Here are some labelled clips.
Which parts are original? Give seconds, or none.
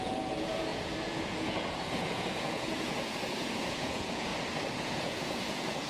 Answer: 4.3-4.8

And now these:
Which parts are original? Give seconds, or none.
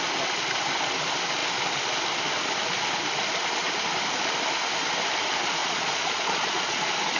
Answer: 0.0-5.6; 6.8-7.2